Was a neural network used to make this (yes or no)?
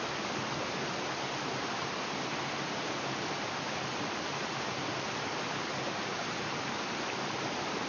yes